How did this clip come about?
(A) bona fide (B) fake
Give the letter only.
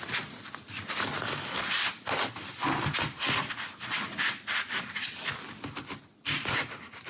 A